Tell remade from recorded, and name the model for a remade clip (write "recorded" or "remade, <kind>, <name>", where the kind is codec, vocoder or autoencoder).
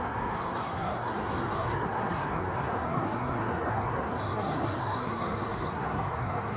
remade, codec, SNAC